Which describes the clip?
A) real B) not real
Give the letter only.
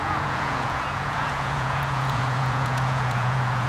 B